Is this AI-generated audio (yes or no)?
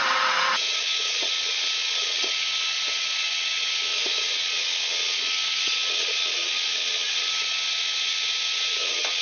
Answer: yes